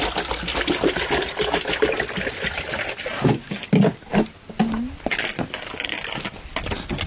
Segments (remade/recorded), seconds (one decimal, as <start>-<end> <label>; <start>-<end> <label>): 0.0-7.1 recorded